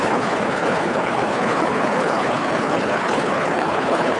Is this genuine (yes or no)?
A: no